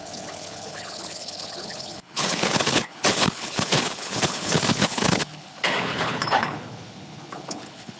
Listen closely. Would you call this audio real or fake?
fake